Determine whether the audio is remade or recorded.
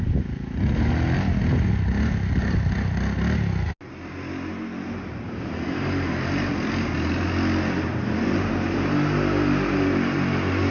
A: recorded